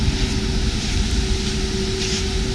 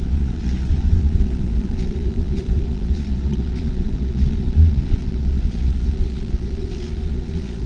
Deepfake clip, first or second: second